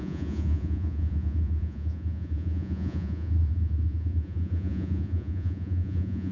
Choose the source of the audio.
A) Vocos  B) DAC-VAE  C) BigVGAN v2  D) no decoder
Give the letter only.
A